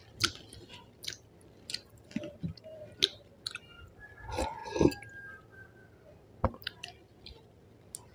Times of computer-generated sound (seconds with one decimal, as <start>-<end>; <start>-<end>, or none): none